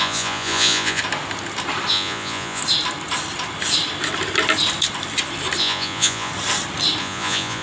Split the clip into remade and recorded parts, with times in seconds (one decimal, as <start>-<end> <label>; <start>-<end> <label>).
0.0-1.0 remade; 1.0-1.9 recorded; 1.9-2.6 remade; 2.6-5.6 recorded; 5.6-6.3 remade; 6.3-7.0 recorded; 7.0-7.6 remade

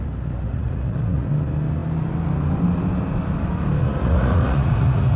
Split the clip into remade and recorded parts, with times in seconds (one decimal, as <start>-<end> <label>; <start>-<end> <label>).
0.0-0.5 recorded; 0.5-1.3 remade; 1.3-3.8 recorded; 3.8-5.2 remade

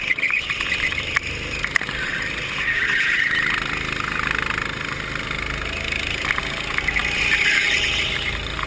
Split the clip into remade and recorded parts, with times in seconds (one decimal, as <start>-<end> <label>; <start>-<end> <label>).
0.0-8.7 recorded